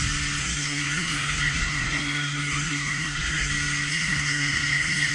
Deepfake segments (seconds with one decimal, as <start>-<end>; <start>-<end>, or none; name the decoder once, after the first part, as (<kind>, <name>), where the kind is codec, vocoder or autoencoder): 0.4-3.5 (codec, SNAC); 3.9-5.1